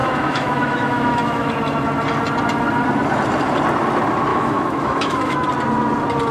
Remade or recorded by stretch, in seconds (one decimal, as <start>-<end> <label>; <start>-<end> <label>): 0.0-1.5 remade; 1.5-4.3 recorded; 4.3-5.5 remade; 5.5-6.3 recorded